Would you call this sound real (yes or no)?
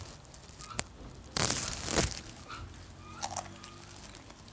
yes